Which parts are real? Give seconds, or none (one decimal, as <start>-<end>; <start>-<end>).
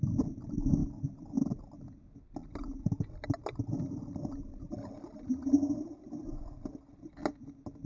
0.0-7.9